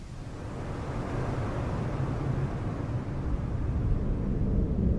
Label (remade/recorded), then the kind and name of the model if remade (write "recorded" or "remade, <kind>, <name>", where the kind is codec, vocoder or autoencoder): recorded